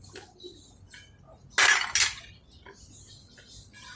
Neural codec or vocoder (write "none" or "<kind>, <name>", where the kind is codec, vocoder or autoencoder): none